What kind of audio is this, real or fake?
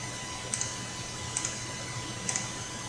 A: real